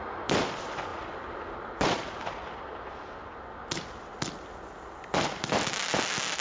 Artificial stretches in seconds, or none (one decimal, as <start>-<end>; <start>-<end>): none